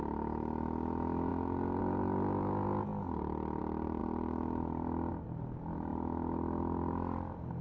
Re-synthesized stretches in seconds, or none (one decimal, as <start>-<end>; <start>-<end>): none